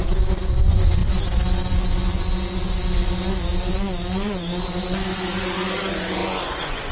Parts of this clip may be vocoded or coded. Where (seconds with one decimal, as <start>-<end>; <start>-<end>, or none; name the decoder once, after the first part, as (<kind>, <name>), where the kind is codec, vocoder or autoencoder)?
0.0-1.0 (vocoder, Vocos); 3.7-6.9